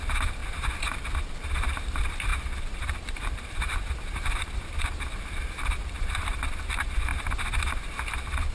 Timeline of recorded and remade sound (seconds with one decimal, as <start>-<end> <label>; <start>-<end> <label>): 0.0-0.4 remade; 0.4-1.8 recorded; 1.8-7.1 remade; 7.1-8.5 recorded